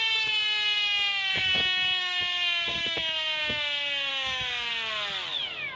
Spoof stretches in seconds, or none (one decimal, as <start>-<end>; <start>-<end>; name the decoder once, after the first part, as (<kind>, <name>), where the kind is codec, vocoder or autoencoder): 1.3-2.2 (codec, DAC); 2.7-3.4; 4.1-4.7